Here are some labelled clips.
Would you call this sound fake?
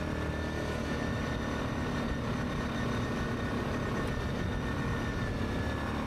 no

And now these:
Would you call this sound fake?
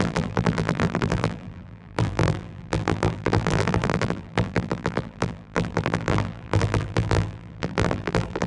yes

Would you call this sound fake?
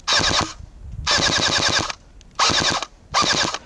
no